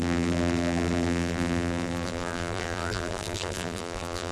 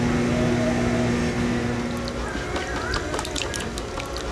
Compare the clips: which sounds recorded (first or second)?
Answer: second